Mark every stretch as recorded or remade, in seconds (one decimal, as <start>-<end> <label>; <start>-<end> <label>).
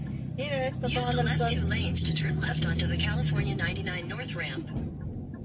0.0-1.9 recorded; 1.9-2.6 remade; 2.6-5.4 recorded